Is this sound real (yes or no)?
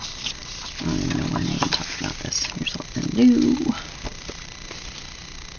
yes